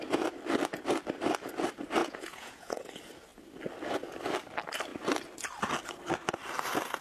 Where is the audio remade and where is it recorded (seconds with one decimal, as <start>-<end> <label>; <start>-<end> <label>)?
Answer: 0.0-2.0 recorded; 2.0-2.9 remade; 2.9-7.0 recorded